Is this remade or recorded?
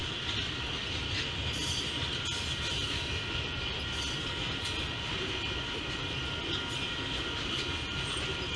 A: recorded